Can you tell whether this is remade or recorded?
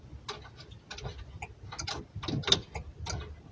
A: recorded